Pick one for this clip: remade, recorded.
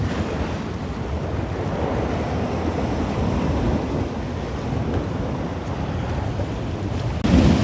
recorded